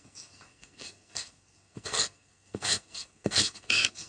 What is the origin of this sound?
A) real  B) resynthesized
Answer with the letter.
B